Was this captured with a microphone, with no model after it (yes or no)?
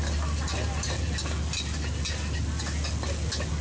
yes